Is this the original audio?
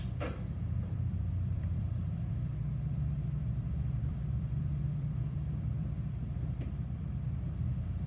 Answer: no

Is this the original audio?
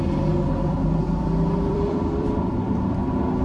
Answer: no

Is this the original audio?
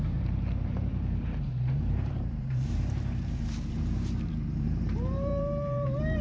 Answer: no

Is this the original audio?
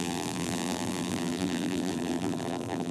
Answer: no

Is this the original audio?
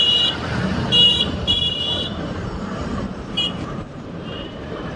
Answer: no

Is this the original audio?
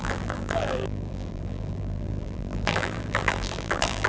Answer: no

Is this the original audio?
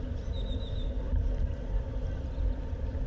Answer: no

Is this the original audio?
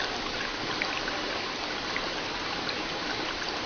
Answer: yes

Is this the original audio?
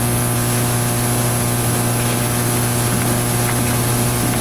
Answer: yes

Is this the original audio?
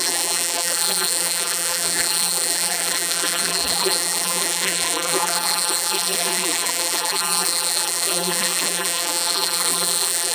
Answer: no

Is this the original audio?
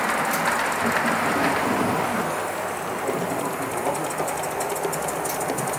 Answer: yes